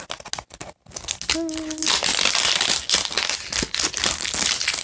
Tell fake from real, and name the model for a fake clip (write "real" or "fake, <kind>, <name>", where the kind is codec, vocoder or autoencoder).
real